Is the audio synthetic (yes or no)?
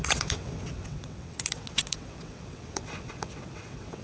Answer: yes